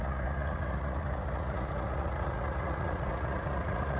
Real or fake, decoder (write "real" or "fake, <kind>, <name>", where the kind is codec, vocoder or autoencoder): fake, vocoder, Vocos